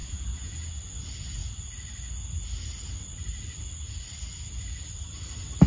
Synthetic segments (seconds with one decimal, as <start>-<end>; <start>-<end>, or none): 0.0-0.7